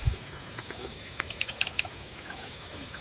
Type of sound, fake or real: fake